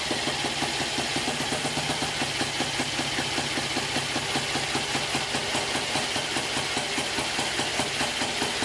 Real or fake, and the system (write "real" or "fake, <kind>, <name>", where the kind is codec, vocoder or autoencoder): real